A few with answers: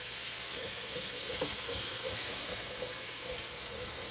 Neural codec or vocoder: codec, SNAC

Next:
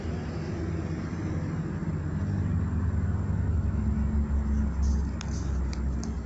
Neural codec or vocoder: none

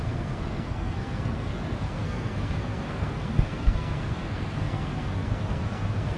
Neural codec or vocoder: codec, SNAC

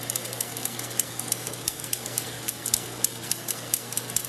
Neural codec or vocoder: codec, SNAC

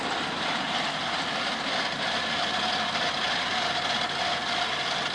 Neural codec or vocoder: none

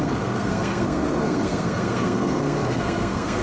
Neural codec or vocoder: codec, SNAC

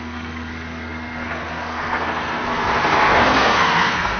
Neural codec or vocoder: codec, SNAC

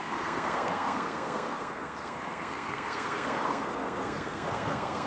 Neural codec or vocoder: codec, SNAC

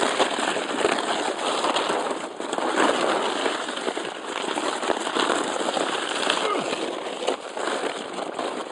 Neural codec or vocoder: none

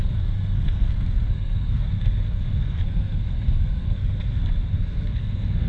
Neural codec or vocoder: codec, SNAC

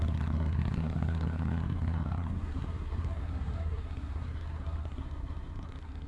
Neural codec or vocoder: codec, SNAC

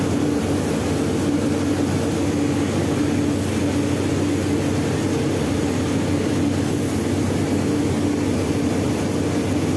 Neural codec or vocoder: none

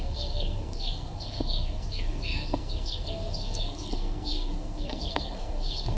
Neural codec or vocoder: codec, SNAC